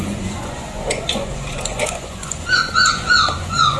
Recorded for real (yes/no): no